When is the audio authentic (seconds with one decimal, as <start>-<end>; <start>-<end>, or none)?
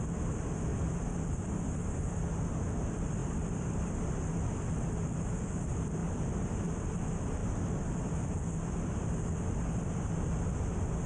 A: 0.0-0.7; 1.4-3.2; 3.9-6.0; 6.7-7.4; 8.4-11.1